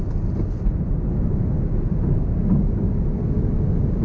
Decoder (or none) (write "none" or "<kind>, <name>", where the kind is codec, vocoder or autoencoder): none